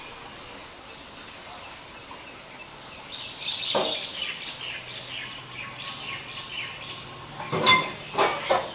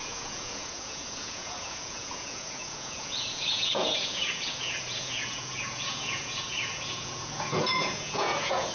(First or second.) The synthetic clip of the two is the second